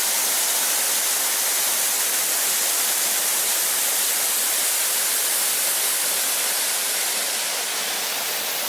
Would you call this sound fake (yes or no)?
yes